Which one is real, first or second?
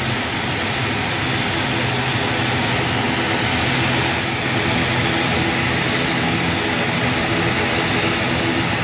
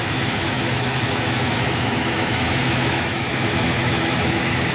first